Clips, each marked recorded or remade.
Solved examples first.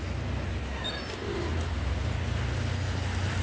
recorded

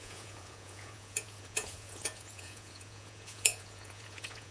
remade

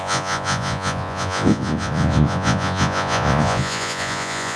remade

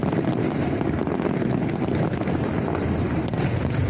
recorded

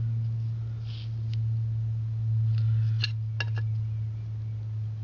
recorded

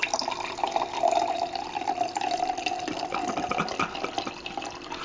recorded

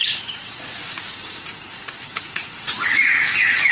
remade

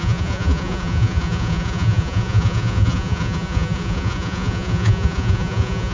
remade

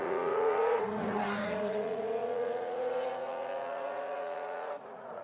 remade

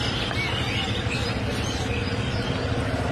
recorded